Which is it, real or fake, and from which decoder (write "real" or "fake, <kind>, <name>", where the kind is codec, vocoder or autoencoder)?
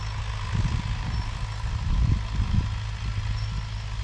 real